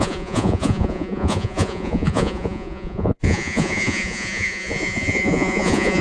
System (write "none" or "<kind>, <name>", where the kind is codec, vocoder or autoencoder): vocoder, Vocos